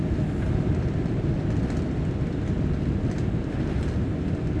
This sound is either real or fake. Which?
real